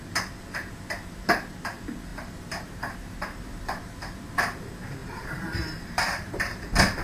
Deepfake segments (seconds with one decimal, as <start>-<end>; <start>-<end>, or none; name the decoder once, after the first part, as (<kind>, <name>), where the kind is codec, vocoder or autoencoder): 2.1-4.6 (vocoder, BigVGAN v2); 5.0-6.6